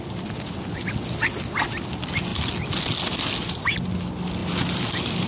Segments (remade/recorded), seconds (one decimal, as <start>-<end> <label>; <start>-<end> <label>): 0.0-5.3 recorded